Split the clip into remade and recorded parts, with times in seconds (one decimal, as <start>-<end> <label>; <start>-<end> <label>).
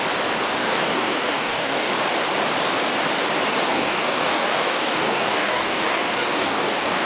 0.0-0.6 recorded; 0.6-1.9 remade; 1.9-3.7 recorded; 3.7-7.1 remade